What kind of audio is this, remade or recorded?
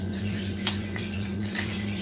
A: remade